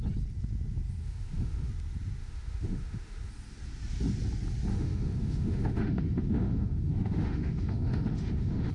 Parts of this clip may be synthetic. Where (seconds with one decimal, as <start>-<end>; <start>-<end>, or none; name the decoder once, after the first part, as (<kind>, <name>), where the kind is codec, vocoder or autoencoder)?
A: 1.0-1.7 (autoencoder, DAC-VAE); 2.2-3.3; 4.7-8.7